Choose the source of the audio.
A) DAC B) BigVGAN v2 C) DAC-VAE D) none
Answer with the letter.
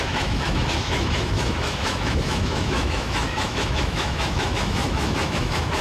C